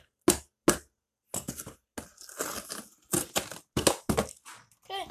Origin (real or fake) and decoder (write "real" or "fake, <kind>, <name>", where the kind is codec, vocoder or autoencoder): real